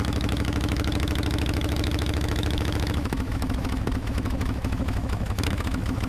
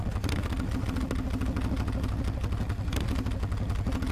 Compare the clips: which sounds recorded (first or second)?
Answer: second